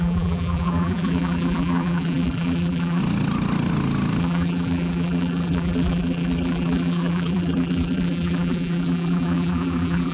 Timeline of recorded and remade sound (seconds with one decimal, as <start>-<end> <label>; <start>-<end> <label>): 0.0-3.0 remade; 3.0-4.2 recorded; 4.2-10.1 remade